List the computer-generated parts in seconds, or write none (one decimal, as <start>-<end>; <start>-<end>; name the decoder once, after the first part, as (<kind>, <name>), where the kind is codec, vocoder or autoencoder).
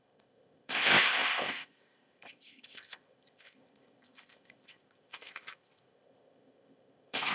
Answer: 0.0-7.3 (codec, ZipCodec)